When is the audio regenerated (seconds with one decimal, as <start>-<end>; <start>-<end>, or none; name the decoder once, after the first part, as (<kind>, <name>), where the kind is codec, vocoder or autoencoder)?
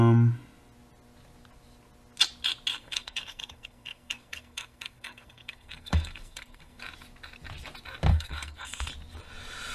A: 2.7-6.8 (codec, SNAC); 8.1-8.9